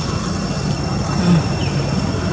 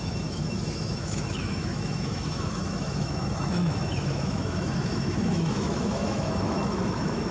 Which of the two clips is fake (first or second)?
second